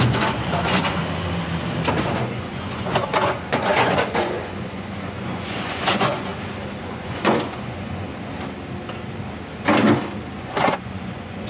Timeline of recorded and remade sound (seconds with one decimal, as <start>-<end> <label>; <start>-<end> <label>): 0.0-1.0 remade; 1.0-2.0 recorded; 2.0-6.3 remade; 6.3-6.8 recorded; 6.8-8.1 remade; 8.1-10.4 recorded; 10.4-11.5 remade